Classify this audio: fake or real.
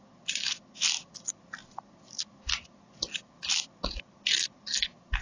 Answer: real